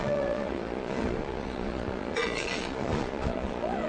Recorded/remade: remade